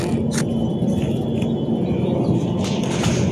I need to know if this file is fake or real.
real